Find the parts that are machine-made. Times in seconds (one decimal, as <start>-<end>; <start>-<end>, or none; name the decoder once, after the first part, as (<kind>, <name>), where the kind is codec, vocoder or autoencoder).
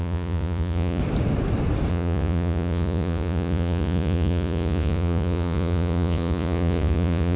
0.0-1.0 (vocoder, Vocos); 1.9-7.4